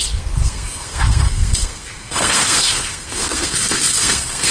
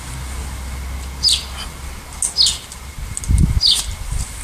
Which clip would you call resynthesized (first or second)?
first